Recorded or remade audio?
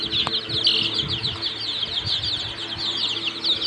recorded